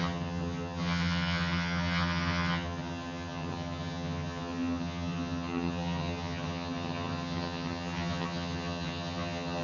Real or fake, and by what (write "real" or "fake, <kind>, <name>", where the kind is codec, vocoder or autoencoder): fake, vocoder, HiFi-GAN